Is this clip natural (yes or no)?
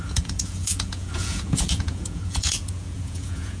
no